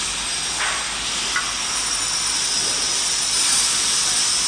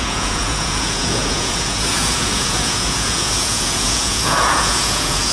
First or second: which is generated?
second